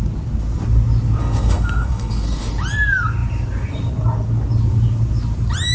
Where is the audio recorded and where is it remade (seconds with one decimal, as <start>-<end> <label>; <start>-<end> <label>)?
0.0-1.2 recorded; 1.2-2.5 remade; 2.5-5.7 recorded